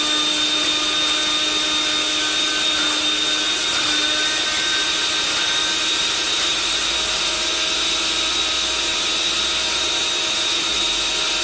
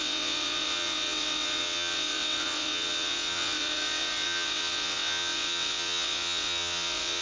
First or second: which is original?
first